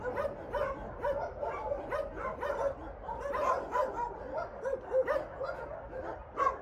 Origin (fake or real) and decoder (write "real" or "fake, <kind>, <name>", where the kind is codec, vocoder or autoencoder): real